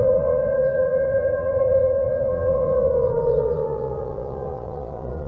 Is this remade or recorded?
remade